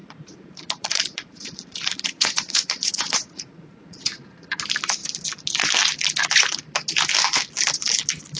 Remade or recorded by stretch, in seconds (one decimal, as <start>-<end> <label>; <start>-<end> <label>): 0.0-4.6 remade; 4.6-8.4 recorded